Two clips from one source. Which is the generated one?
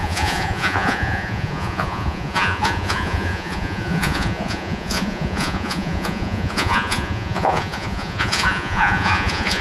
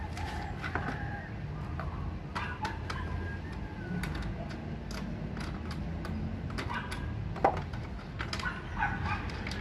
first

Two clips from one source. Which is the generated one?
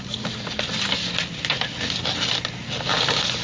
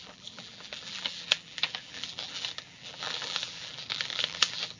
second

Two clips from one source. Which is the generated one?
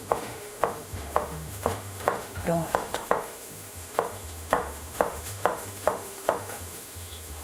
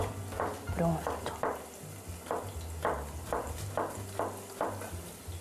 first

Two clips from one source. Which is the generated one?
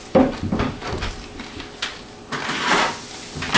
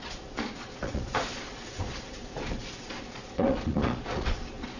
second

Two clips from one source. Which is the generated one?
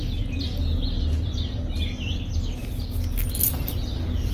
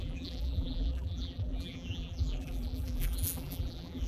second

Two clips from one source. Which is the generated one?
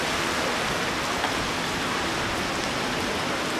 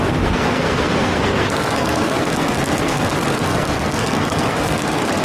second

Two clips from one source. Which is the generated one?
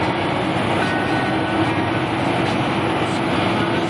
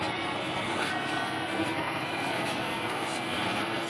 second